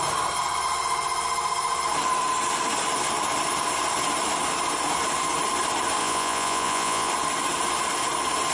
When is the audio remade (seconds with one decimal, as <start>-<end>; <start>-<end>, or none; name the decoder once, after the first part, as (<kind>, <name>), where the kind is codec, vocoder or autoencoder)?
6.0-7.1 (vocoder, Vocos)